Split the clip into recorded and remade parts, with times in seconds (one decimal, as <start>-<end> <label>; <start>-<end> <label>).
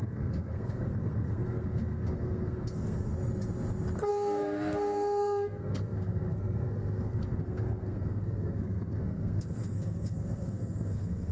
0.0-3.1 remade; 3.1-4.1 recorded; 4.1-11.3 remade